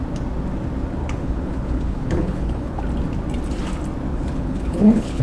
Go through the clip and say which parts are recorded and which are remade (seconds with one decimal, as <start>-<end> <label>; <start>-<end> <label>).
0.0-1.0 recorded; 1.0-2.8 remade; 2.8-4.1 recorded; 4.1-5.2 remade